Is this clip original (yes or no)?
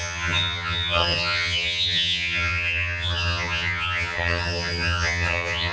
no